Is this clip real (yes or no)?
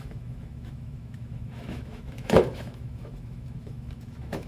no